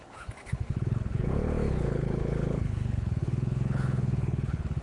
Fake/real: fake